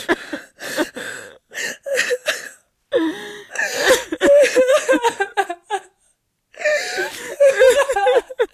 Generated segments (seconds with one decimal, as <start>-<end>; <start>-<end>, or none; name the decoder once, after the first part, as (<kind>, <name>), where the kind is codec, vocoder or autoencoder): none